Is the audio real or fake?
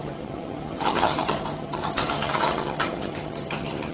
fake